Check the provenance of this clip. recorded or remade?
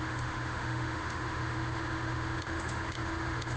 remade